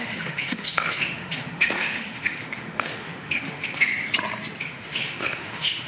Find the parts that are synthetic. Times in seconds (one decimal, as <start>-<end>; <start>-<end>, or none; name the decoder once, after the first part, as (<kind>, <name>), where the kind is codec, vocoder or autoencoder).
0.0-3.9 (autoencoder, DAC-VAE); 4.6-5.9